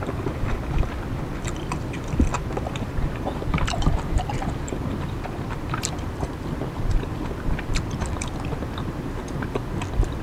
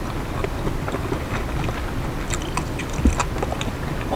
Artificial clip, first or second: first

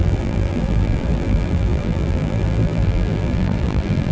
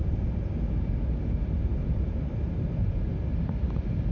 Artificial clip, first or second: first